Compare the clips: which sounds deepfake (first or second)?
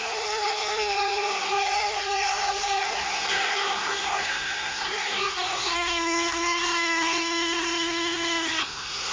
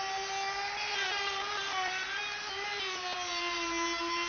first